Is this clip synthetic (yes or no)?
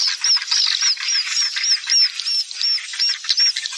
no